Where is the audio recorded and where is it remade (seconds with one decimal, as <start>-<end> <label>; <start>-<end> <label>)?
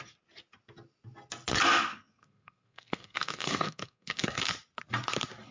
0.0-1.9 recorded; 1.9-4.4 remade; 4.4-5.5 recorded